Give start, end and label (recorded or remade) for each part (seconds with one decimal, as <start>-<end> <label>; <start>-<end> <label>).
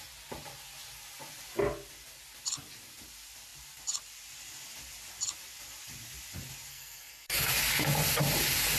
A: 0.0-6.7 recorded; 6.7-7.5 remade; 7.5-8.8 recorded